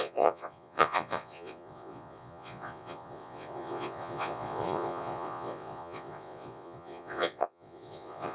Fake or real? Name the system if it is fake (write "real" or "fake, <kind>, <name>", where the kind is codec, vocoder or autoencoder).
fake, vocoder, Vocos